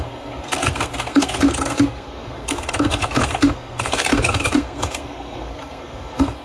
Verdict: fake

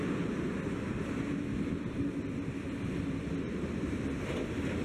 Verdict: real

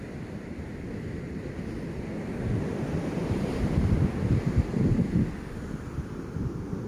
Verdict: real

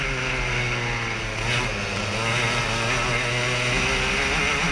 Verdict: real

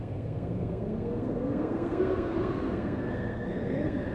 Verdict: fake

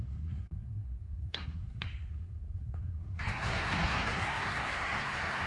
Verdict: fake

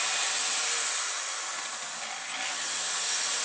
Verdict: real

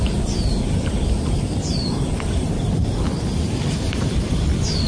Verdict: real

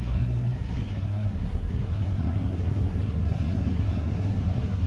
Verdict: fake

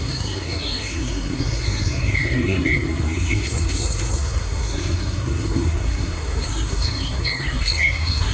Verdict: fake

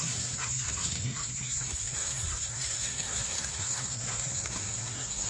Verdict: fake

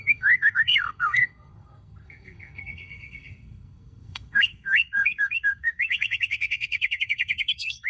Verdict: fake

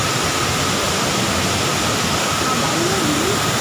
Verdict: real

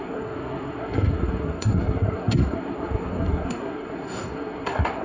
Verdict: fake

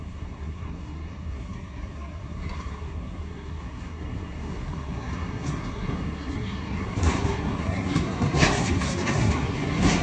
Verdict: fake